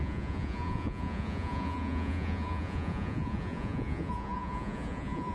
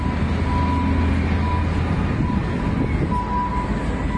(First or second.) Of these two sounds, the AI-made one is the first